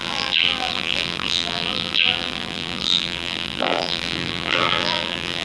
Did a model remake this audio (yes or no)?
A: yes